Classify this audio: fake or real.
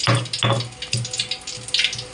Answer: real